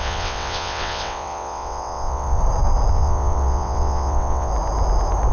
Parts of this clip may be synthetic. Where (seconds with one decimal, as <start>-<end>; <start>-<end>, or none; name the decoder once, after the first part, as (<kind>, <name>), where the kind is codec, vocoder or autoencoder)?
0.0-2.4 (vocoder, WaveNeXt); 2.9-4.5